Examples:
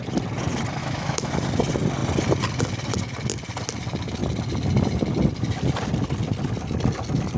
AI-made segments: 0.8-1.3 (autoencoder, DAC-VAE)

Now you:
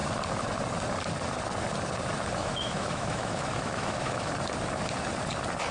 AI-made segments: 2.4-4.3 (autoencoder, DAC-VAE)

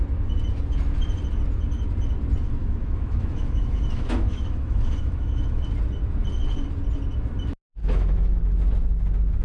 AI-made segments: 2.6-5.6 (autoencoder, DAC-VAE); 7.8-8.4

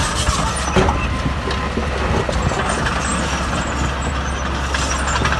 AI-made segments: none

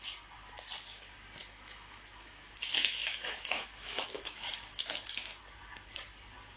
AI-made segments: 1.4-5.4 (autoencoder, DAC-VAE)

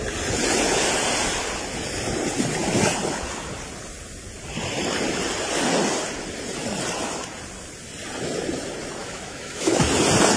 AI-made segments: 9.0-9.8 (autoencoder, DAC-VAE)

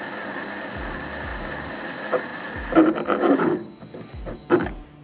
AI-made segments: none

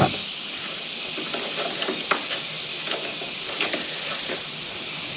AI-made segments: 2.7-3.2 (autoencoder, DAC-VAE)